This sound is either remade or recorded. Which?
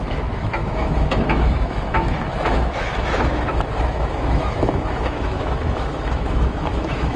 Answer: remade